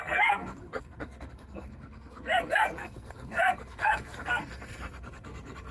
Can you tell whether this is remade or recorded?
remade